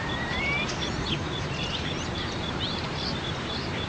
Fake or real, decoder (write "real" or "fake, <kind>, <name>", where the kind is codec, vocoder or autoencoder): fake, vocoder, BigVGAN v2